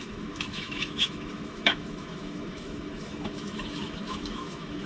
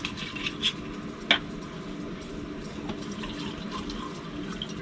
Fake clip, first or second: first